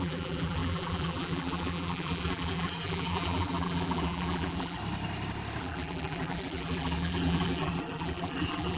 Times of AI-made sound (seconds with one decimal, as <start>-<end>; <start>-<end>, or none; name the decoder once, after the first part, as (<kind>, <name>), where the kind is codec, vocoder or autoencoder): 0.0-4.8 (vocoder, BigVGAN v2); 5.6-8.8